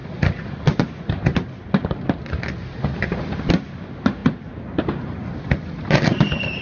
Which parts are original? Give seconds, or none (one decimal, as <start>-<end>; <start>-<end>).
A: 0.0-6.6